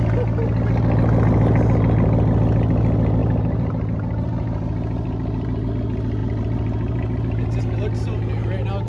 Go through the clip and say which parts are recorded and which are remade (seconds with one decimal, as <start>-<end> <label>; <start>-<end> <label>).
0.0-3.2 recorded; 3.2-5.7 remade; 5.7-6.2 recorded; 6.2-7.6 remade; 7.6-8.9 recorded